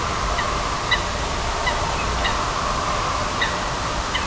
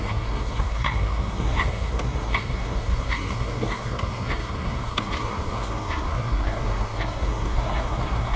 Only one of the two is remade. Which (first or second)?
second